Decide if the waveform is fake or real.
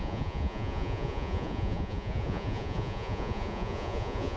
fake